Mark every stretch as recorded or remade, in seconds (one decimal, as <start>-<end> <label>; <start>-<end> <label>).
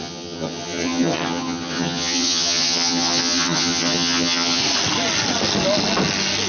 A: 0.0-4.6 remade; 4.6-6.5 recorded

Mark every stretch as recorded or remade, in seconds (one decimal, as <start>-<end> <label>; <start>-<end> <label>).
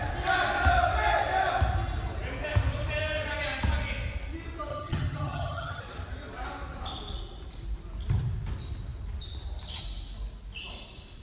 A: 0.0-4.7 recorded; 4.7-5.8 remade; 5.8-11.2 recorded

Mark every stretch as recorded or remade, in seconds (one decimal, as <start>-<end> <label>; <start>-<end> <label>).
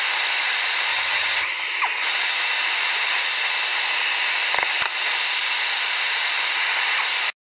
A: 0.0-0.9 recorded; 0.9-1.5 remade; 1.5-7.4 recorded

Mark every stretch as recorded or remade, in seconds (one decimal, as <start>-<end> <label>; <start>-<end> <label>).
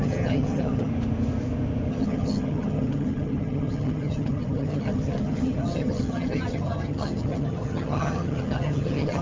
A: 0.0-0.9 remade; 0.9-1.9 recorded; 1.9-9.2 remade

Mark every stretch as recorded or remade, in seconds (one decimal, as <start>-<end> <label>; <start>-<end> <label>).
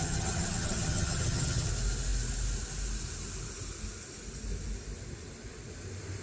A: 0.0-1.7 remade; 1.7-6.2 recorded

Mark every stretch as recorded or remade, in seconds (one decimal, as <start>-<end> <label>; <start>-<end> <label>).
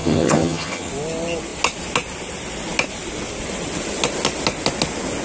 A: 0.0-0.9 remade; 0.9-5.2 recorded